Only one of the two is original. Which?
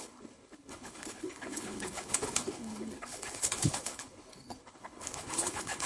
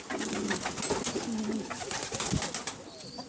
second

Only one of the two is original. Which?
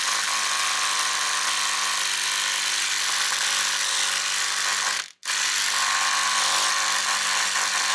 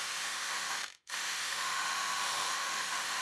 first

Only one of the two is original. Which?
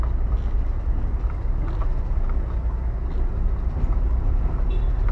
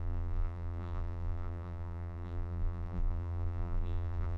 first